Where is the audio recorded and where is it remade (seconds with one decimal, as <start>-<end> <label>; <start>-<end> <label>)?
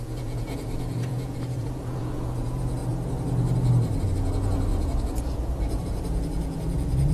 0.0-2.8 remade; 2.8-4.0 recorded; 4.0-7.1 remade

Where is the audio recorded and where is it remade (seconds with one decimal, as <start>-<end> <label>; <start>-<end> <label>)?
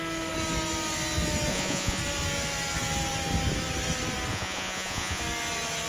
0.0-1.5 recorded; 1.5-2.0 remade; 2.0-4.3 recorded; 4.3-5.2 remade; 5.2-5.9 recorded